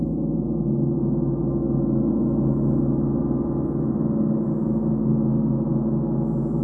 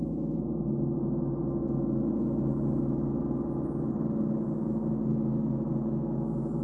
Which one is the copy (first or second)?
first